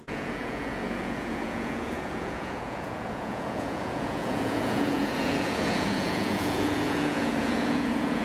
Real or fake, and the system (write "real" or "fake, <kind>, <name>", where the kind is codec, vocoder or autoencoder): fake, vocoder, Vocos